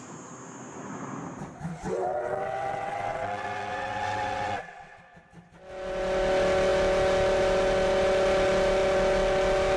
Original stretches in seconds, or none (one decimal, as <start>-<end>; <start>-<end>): 0.0-1.7; 5.0-9.8